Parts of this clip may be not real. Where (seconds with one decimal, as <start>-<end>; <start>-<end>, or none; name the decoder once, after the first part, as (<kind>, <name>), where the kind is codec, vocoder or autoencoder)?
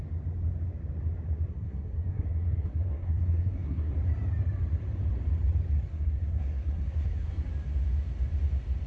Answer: 1.5-3.9 (codec, SNAC); 5.9-7.5